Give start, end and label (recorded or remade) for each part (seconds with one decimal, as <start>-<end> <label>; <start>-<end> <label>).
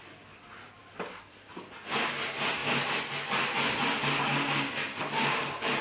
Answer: 0.0-5.8 recorded